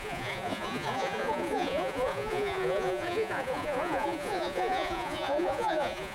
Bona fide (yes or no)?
no